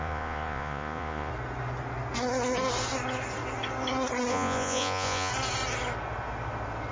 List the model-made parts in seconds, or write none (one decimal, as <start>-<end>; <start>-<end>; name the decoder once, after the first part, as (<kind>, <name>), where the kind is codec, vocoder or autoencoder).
0.0-1.3 (vocoder, Vocos); 4.3-5.3